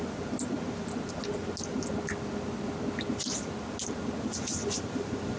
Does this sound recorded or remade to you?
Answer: recorded